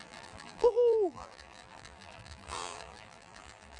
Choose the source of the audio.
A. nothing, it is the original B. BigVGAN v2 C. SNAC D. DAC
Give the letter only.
B